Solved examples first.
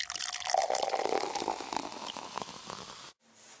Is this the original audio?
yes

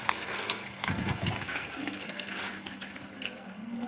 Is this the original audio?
no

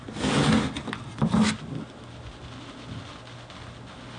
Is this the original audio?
yes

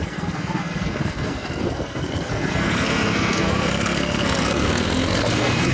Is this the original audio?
no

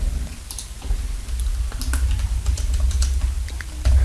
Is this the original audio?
yes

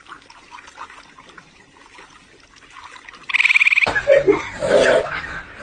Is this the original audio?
yes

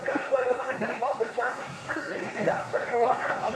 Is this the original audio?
no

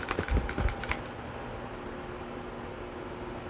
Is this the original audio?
yes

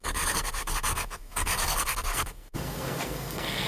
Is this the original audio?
no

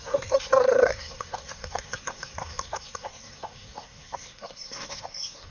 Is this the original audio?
no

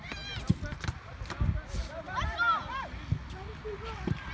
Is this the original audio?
yes